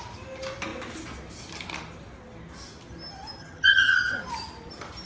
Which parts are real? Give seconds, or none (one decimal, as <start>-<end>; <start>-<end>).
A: 0.0-3.4; 4.2-5.1